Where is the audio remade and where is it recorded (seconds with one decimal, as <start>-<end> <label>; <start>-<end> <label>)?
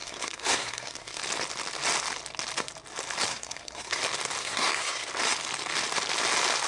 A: 0.0-1.2 remade; 1.2-3.3 recorded; 3.3-4.0 remade; 4.0-4.4 recorded; 4.4-5.1 remade; 5.1-6.7 recorded